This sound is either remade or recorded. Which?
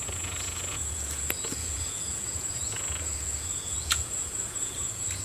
remade